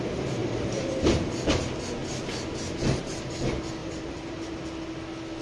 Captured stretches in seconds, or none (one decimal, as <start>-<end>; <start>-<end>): 0.0-0.4; 1.5-3.8; 4.5-5.4